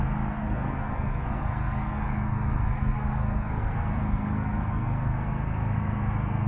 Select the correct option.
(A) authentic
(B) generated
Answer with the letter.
B